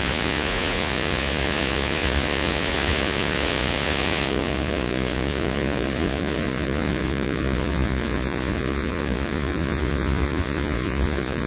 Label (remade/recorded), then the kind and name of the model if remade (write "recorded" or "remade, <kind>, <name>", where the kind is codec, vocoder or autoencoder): remade, vocoder, Vocos